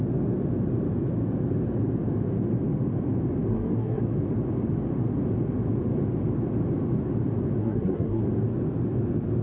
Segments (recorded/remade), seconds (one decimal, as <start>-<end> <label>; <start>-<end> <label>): 0.0-3.5 recorded; 3.5-4.0 remade; 4.0-7.6 recorded; 7.6-8.2 remade; 8.2-9.4 recorded